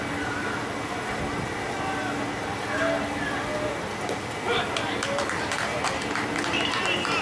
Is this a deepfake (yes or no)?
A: no